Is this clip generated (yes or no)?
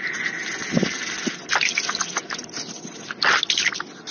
no